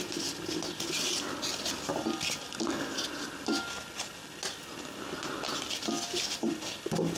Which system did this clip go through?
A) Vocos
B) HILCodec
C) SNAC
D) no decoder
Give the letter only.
D